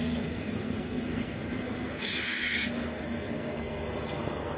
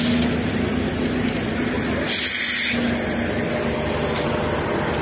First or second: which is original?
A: second